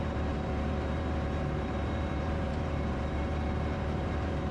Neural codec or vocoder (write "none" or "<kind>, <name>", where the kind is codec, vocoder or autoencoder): vocoder, BigVGAN v2